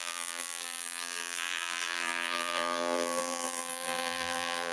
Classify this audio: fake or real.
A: fake